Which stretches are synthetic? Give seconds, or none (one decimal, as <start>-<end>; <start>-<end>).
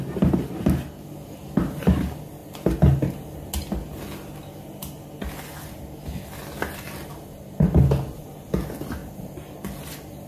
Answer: 9.0-9.9